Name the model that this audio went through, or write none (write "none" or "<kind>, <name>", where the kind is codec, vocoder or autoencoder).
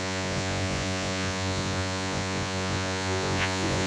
vocoder, Vocos